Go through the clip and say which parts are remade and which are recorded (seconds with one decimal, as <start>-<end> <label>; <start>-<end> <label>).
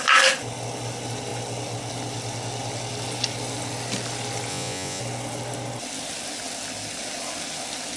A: 0.0-4.5 recorded; 4.5-5.0 remade; 5.0-8.0 recorded